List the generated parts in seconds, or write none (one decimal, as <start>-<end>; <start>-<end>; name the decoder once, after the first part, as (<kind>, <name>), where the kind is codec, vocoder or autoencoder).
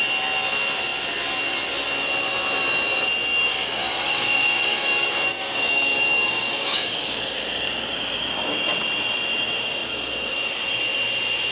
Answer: 3.3-8.3 (codec, DAC)